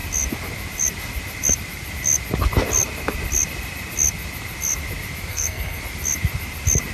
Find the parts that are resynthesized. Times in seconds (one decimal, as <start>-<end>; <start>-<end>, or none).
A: 5.3-5.8